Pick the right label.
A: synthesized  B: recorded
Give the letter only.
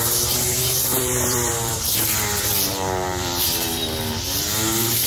A